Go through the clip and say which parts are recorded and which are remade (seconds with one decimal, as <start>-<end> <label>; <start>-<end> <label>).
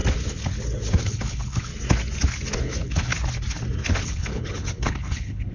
0.0-1.0 recorded; 1.0-1.7 remade; 1.7-2.6 recorded; 2.6-3.1 remade; 3.1-4.0 recorded; 4.0-5.5 remade